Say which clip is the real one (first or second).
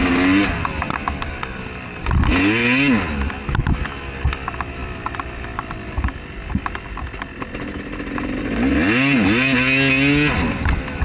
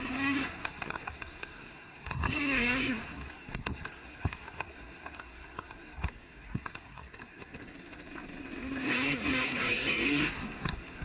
first